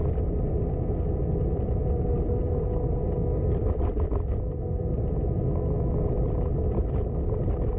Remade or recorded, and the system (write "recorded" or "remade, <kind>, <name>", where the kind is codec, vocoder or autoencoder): recorded